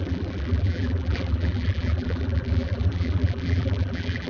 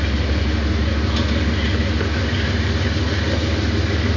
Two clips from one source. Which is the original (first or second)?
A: second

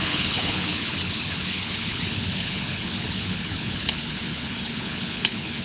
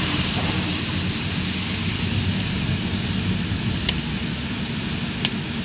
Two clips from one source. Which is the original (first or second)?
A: second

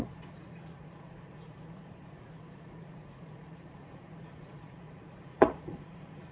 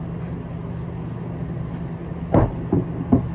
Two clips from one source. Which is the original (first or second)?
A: second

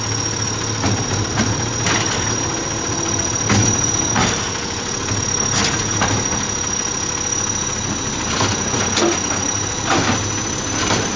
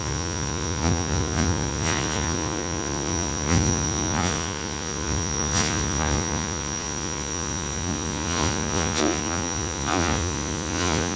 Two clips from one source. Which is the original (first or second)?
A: first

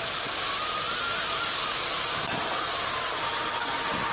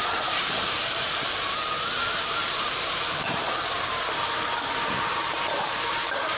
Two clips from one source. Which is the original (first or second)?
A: first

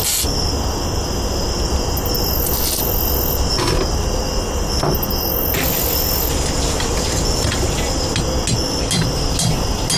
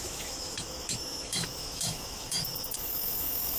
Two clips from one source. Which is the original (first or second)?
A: first